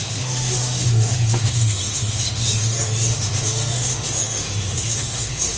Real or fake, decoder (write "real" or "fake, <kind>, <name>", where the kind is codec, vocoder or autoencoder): fake, autoencoder, DAC-VAE